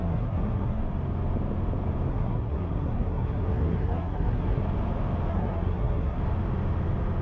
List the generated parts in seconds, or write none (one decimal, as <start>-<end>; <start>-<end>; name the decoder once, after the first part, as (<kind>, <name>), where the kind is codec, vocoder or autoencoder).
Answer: 0.0-0.8 (codec, SNAC); 2.1-4.6; 5.3-6.2